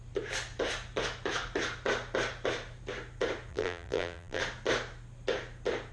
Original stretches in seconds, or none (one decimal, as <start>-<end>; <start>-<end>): 0.0-3.5; 4.4-5.9